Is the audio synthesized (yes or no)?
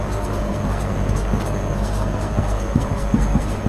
yes